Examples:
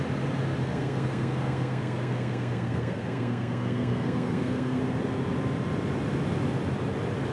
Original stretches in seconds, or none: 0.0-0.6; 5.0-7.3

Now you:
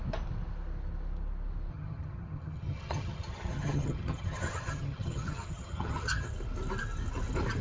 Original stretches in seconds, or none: 0.0-1.7; 6.3-7.6

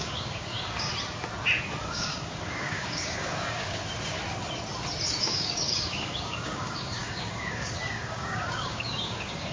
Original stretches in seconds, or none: 0.9-1.8; 3.8-5.2

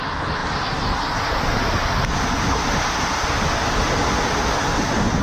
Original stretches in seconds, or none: 0.0-5.2

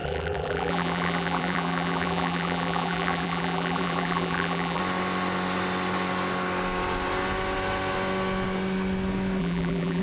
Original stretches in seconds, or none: 4.8-9.4